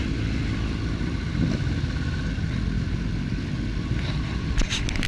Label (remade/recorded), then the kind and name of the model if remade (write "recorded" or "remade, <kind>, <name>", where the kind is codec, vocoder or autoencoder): recorded